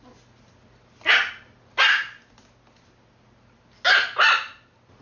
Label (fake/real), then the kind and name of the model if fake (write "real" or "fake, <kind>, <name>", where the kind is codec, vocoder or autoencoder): real